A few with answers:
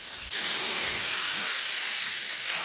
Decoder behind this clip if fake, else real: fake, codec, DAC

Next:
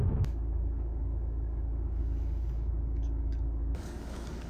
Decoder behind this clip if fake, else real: fake, codec, DAC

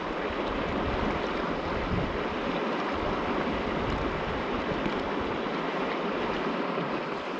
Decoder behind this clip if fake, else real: real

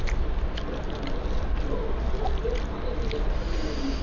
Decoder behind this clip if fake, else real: real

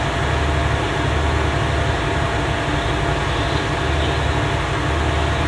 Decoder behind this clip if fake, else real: real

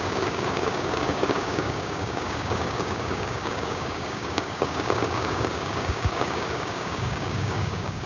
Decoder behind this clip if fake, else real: fake, codec, DAC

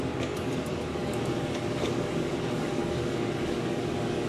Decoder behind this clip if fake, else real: fake, codec, DAC